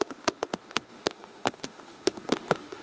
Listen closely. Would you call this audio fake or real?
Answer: fake